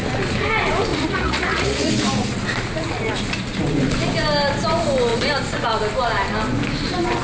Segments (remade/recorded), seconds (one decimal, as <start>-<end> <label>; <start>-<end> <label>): 0.0-0.9 recorded; 0.9-1.9 remade; 1.9-7.2 recorded